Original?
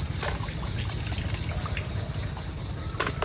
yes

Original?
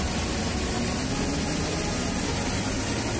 yes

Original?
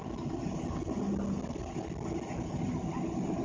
yes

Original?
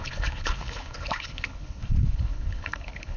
no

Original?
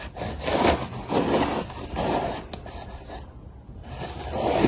yes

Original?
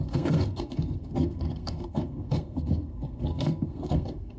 no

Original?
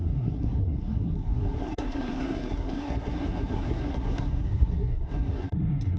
no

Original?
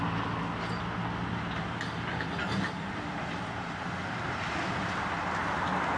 yes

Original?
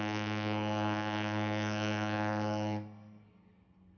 no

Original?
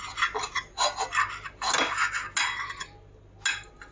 yes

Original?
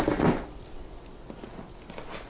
yes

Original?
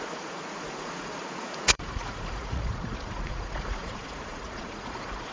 no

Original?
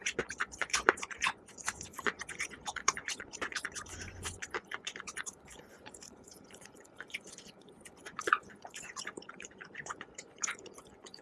no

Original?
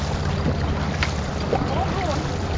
yes